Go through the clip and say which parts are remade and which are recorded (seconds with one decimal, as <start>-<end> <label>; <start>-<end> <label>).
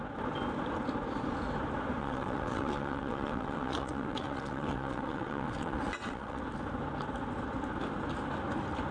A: 0.0-2.0 recorded; 2.0-6.4 remade; 6.4-8.9 recorded